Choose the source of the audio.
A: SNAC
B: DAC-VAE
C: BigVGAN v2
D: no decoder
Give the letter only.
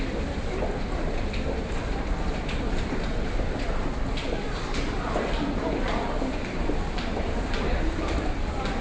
C